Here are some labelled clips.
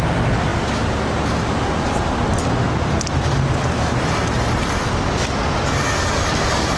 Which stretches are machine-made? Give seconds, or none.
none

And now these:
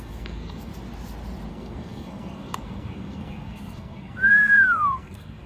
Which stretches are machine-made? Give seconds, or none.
0.0-0.7 (codec, SNAC); 1.5-5.5

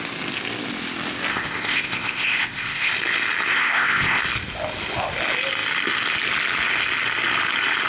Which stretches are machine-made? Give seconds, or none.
1.3-2.9 (codec, ZipCodec); 3.5-4.2

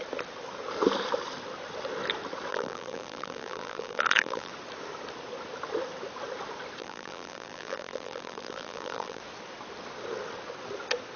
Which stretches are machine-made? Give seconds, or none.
2.5-4.5 (vocoder, BigVGAN v2); 6.8-9.2

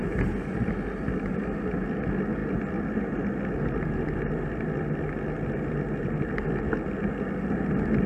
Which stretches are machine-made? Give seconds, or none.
none

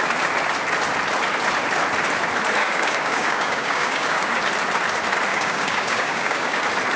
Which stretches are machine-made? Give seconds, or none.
2.6-4.4 (codec, DAC); 5.3-6.6